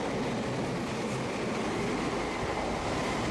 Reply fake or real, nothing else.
real